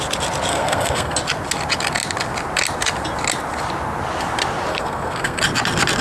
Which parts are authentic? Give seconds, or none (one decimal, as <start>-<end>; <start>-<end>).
0.0-0.5; 1.2-4.7; 5.4-6.0